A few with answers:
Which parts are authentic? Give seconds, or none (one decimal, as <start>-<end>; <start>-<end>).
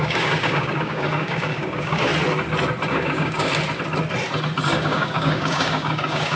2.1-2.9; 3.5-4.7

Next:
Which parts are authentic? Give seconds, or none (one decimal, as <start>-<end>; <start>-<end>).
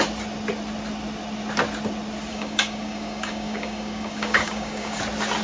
0.0-2.3; 5.0-5.4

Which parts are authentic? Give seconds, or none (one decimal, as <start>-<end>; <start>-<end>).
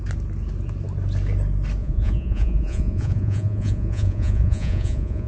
0.0-1.8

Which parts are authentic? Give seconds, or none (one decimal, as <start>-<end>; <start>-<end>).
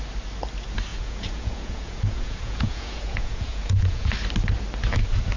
0.0-0.9; 4.1-5.4